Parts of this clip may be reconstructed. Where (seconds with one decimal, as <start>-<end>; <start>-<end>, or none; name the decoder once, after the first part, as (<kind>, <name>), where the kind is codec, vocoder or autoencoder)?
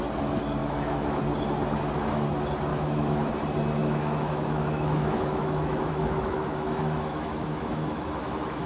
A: 0.6-1.2 (autoencoder, DAC-VAE); 2.7-3.3; 3.8-8.7